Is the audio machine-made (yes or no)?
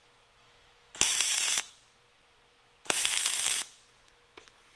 yes